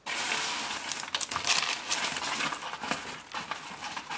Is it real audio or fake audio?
real